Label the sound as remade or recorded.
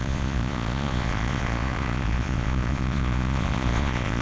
remade